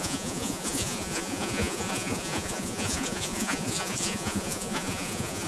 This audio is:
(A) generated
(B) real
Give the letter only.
A